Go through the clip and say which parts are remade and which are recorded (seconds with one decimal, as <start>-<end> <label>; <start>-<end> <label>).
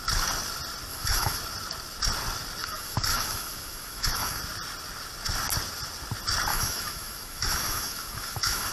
0.0-0.9 recorded; 0.9-1.4 remade; 1.4-2.6 recorded; 2.6-4.4 remade; 4.4-6.5 recorded; 6.5-8.7 remade